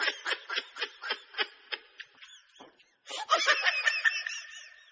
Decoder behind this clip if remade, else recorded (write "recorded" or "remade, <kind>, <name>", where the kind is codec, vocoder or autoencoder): recorded